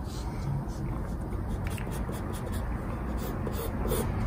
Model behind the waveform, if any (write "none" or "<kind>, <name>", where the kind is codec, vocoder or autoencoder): none